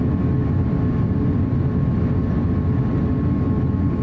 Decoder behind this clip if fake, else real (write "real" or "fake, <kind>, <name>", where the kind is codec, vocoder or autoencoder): real